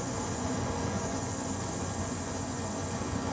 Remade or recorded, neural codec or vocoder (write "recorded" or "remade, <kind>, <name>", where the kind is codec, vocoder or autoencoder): remade, vocoder, Vocos